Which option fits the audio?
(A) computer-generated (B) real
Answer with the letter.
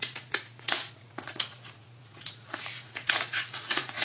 A